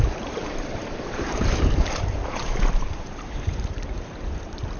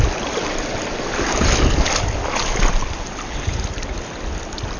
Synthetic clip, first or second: first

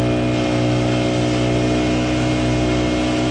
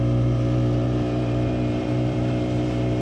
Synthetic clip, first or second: second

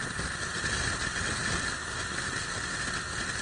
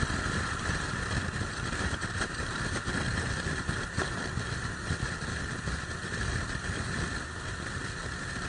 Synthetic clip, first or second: second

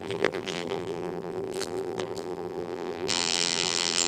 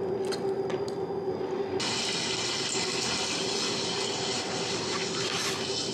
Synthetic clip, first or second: first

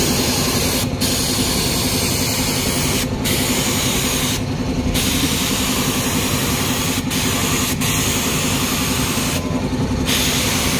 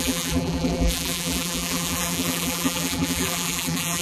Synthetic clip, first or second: second